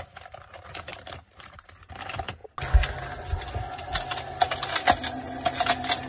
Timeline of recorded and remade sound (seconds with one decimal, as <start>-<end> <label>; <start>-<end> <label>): 0.0-0.9 recorded; 0.9-1.8 remade; 1.8-6.1 recorded